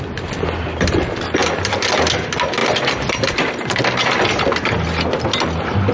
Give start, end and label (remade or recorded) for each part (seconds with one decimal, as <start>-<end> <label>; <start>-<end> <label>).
0.0-5.9 recorded